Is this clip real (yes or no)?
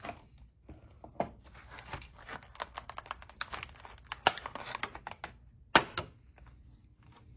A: yes